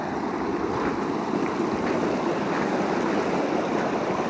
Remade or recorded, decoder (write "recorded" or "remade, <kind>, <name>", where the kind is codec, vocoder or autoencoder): recorded